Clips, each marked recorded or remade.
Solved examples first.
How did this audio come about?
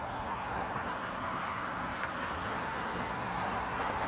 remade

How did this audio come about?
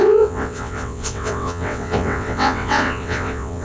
remade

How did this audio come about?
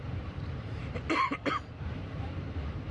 remade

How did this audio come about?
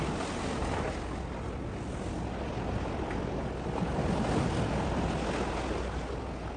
recorded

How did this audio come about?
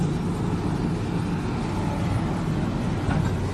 recorded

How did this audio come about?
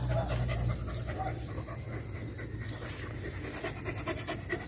recorded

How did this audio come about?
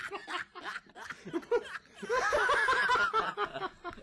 recorded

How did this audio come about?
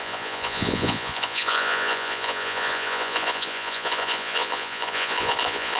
remade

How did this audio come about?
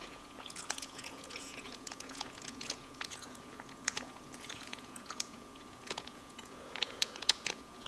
remade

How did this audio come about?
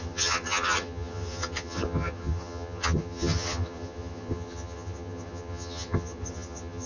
remade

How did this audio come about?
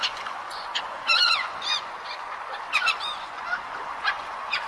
remade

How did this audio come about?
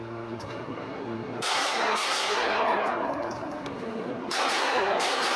remade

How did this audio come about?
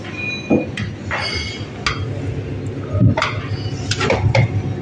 recorded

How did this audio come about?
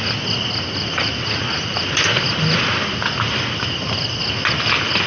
recorded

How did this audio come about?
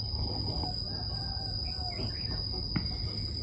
recorded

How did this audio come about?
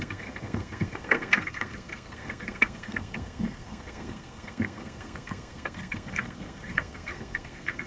remade